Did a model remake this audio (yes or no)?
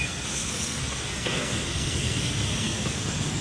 yes